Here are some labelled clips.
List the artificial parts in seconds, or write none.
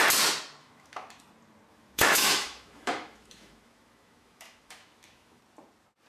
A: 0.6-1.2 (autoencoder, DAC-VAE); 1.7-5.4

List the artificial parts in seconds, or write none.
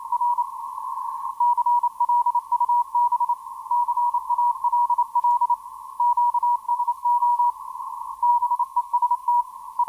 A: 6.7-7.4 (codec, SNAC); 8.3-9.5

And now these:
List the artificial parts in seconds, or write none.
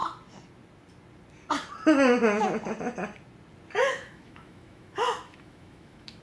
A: 3.8-6.2 (autoencoder, DAC-VAE)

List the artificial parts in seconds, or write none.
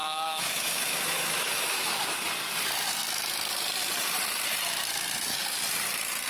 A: 0.0-1.9 (autoencoder, DAC-VAE)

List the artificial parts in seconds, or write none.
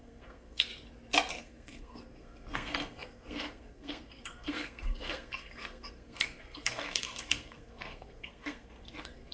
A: 0.0-0.7 (codec, SNAC); 1.3-9.3